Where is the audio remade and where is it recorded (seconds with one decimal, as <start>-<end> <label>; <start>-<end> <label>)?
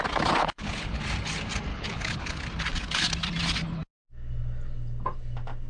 0.0-0.4 recorded; 0.4-1.0 remade; 1.0-1.7 recorded; 1.7-2.4 remade; 2.4-5.7 recorded